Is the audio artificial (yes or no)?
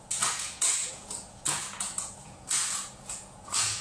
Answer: yes